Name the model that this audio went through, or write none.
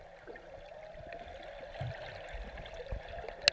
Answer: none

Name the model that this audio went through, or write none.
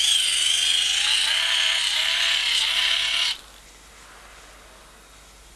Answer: none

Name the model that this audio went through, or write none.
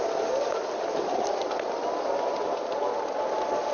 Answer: none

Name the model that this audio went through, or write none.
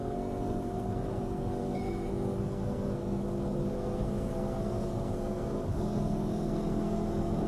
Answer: codec, SNAC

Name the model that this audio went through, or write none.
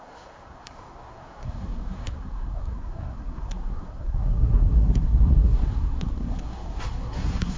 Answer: codec, SNAC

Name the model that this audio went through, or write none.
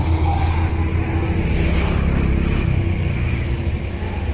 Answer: none